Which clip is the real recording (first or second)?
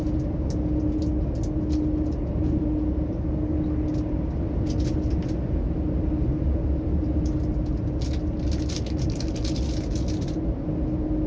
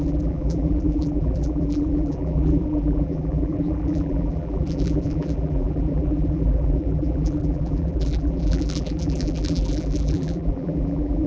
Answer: first